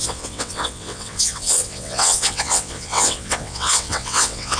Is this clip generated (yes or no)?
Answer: yes